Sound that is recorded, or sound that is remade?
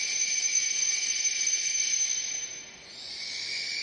remade